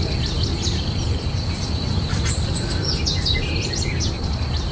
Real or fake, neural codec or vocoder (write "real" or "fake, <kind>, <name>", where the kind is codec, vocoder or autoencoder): real